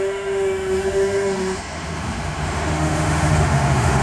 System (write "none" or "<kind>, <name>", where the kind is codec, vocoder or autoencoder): autoencoder, DAC-VAE